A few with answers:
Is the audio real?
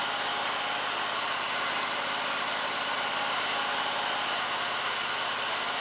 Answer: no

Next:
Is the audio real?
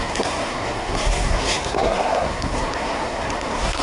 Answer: no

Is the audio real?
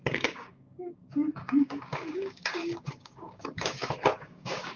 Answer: no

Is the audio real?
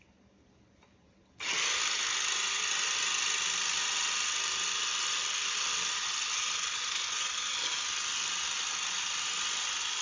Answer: yes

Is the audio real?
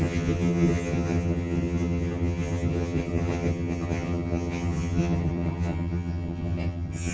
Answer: no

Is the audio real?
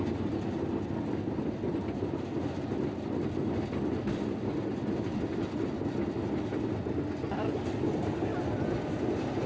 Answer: yes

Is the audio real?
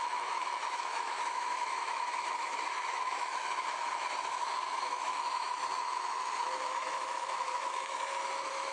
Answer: no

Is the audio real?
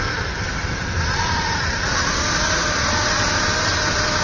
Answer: yes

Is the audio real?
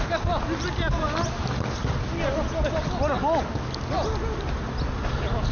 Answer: yes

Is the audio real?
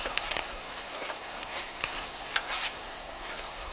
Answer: no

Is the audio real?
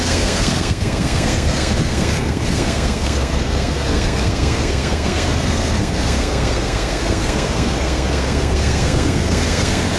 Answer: no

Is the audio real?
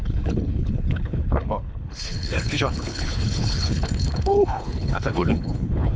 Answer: no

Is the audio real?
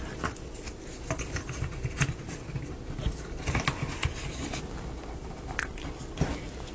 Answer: yes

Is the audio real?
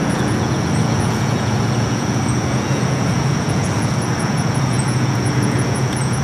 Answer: no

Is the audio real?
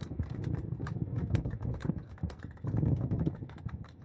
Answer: no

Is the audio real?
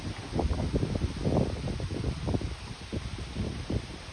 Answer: yes